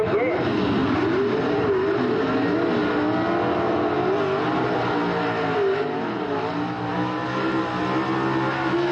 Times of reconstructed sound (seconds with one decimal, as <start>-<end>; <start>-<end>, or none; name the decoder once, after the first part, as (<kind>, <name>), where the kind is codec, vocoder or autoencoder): 0.8-2.2 (vocoder, BigVGAN v2)